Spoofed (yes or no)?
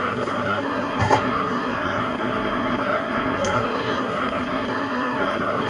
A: yes